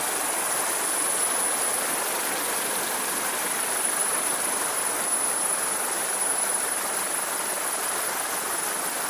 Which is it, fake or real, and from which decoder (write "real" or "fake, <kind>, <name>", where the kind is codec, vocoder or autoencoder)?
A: fake, vocoder, BigVGAN v2